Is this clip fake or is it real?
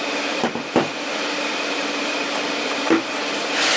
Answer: fake